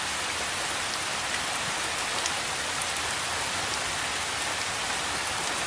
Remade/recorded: recorded